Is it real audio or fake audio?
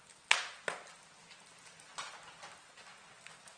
real